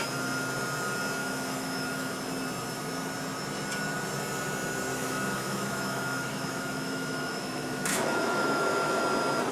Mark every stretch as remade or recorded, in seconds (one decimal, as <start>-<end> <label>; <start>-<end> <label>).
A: 0.0-1.2 recorded; 1.2-2.1 remade; 2.1-4.9 recorded; 4.9-9.0 remade; 9.0-9.5 recorded